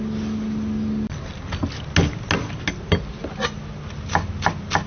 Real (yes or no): yes